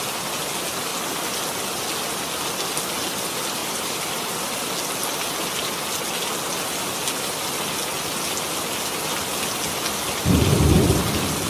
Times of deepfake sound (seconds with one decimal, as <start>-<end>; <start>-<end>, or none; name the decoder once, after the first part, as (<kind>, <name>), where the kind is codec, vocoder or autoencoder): 3.6-4.1 (vocoder, BigVGAN v2)